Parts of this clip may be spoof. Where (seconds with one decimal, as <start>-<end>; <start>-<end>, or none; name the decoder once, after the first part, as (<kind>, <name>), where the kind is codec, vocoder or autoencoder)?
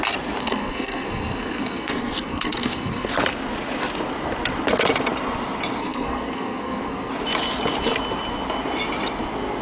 0.4-3.1 (codec, SNAC); 5.8-7.1